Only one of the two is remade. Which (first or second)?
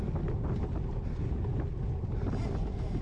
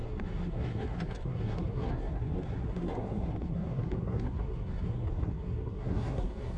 second